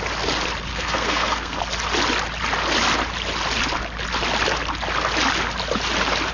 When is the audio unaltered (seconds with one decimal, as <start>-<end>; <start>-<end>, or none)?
0.0-0.7; 1.6-6.3